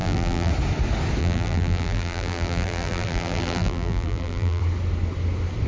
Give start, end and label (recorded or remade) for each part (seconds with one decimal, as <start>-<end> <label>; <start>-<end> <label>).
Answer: 0.0-0.5 remade; 0.5-1.2 recorded; 1.2-4.6 remade; 4.6-5.7 recorded